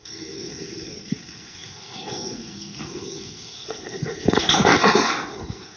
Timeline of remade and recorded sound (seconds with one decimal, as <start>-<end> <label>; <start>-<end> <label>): 0.0-5.8 remade